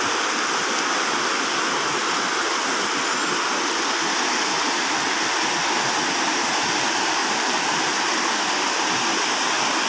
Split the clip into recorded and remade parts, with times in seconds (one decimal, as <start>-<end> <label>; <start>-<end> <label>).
0.0-7.2 recorded; 7.2-8.2 remade; 8.2-9.9 recorded